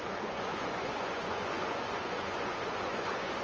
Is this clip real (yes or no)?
no